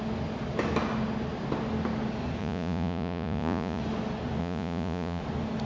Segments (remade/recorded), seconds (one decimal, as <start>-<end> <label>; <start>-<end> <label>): 0.0-2.4 recorded; 2.4-3.8 remade; 3.8-4.4 recorded; 4.4-5.2 remade; 5.2-5.7 recorded